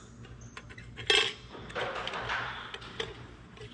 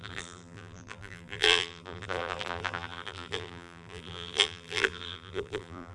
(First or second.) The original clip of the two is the first